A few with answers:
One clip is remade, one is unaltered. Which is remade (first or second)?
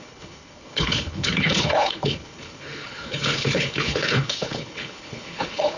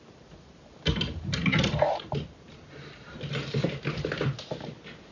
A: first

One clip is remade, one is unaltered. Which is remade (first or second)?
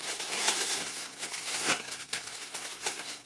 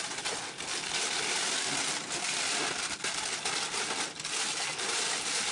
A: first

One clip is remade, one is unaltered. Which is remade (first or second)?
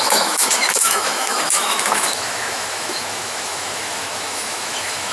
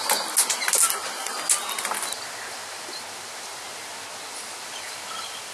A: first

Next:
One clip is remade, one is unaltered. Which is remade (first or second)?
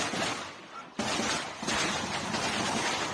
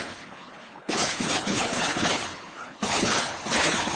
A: second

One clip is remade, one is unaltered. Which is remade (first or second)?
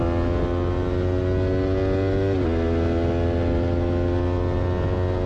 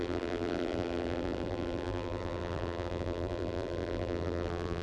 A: second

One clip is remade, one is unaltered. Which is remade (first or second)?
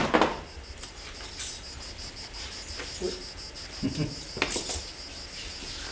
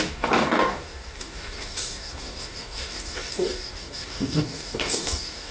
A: second